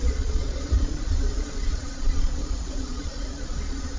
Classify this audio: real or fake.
fake